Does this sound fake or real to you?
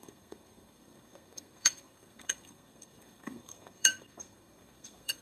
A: fake